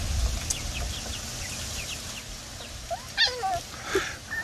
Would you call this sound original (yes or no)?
yes